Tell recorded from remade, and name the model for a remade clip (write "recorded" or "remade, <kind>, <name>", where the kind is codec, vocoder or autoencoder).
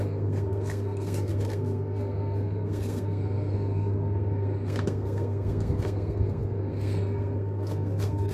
remade, codec, SNAC